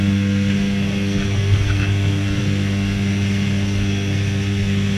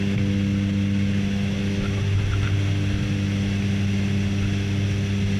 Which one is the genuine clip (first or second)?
second